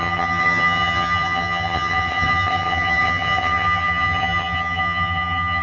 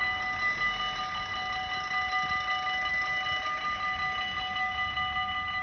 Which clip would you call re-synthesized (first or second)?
first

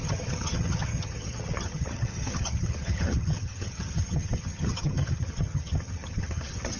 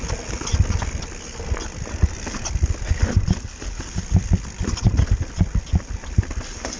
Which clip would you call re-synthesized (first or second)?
first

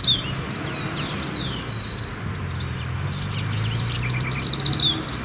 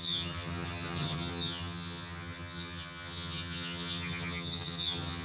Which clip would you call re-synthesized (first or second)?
second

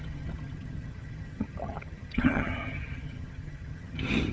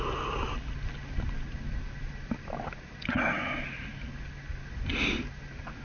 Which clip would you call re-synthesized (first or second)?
first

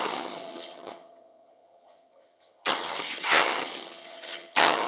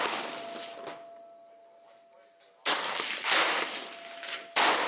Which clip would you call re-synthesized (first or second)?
first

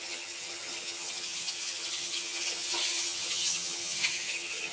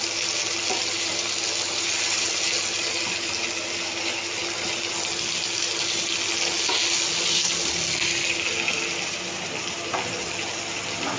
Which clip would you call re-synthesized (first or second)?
first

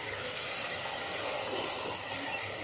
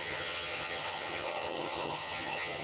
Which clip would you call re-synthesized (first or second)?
second